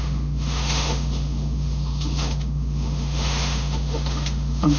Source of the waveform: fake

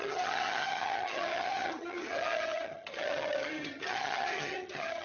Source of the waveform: fake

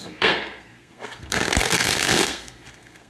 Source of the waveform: fake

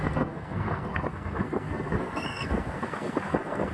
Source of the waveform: fake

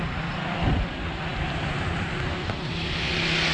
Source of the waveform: real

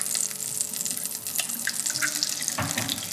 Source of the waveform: real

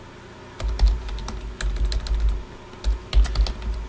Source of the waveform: real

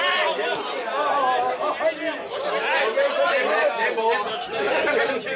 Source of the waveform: real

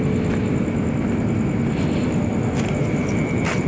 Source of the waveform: real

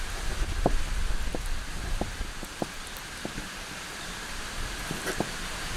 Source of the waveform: real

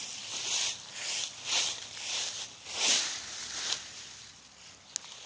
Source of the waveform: real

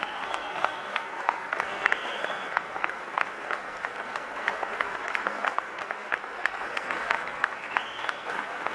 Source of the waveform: fake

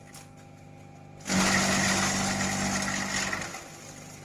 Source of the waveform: real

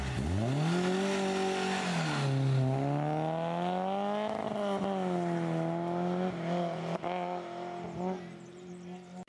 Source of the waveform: real